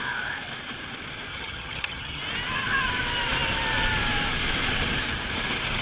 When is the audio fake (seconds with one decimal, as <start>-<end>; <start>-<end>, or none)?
1.3-2.2